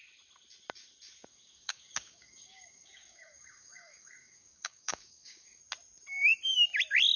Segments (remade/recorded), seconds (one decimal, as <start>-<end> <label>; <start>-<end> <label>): 0.0-1.3 recorded; 1.3-5.6 remade; 5.6-7.2 recorded